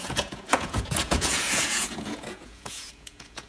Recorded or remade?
remade